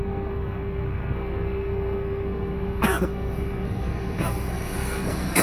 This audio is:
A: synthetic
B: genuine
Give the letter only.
A